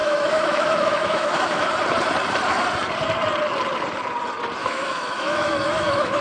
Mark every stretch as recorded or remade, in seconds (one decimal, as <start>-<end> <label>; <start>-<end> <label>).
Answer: 0.0-1.7 remade; 1.7-4.6 recorded; 4.6-6.2 remade

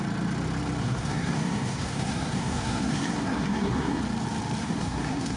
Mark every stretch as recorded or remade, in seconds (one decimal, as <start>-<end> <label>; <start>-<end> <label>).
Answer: 0.0-0.8 recorded; 0.8-4.0 remade; 4.0-4.6 recorded; 4.6-5.4 remade

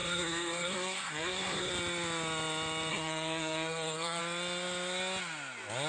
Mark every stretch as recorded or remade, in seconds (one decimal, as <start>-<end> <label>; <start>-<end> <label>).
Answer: 0.0-1.7 remade; 1.7-2.9 recorded; 2.9-4.2 remade; 4.2-5.9 recorded

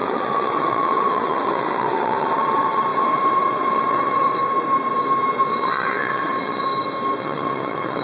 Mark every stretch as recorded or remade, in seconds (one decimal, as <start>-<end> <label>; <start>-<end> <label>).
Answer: 0.0-4.4 remade; 4.4-5.5 recorded; 5.5-6.7 remade; 6.7-7.2 recorded; 7.2-8.0 remade